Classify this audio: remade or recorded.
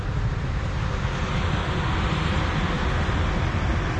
recorded